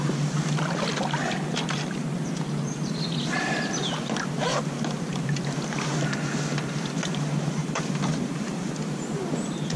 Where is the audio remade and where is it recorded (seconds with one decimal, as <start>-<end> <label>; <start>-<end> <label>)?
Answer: 0.0-7.6 recorded; 7.6-8.7 remade; 8.7-9.8 recorded